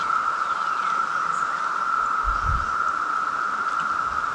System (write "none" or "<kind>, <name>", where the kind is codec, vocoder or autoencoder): none